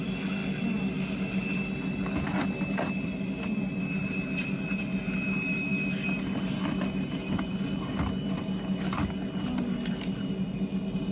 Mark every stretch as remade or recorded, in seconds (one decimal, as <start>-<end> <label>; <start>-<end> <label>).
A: 0.0-11.1 recorded